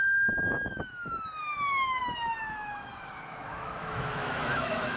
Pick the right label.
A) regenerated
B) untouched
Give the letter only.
A